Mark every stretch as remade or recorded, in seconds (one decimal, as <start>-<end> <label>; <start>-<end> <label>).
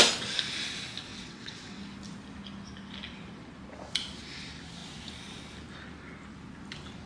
0.0-1.1 recorded; 1.1-1.8 remade; 1.8-7.1 recorded